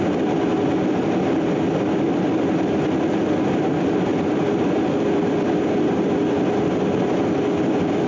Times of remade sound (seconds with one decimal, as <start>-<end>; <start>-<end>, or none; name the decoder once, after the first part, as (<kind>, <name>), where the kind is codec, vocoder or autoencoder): 4.1-5.8 (vocoder, BigVGAN v2)